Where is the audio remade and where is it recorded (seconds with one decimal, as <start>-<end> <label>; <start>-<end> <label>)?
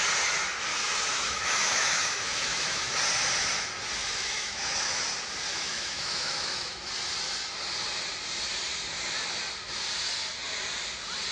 0.0-0.7 recorded; 0.7-3.0 remade; 3.0-4.0 recorded; 4.0-4.9 remade; 4.9-5.5 recorded; 5.5-6.9 remade; 6.9-11.3 recorded